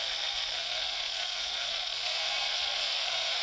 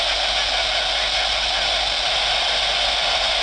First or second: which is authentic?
second